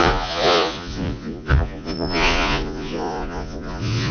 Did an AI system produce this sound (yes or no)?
yes